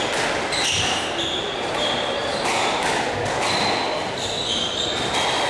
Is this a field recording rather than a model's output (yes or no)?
yes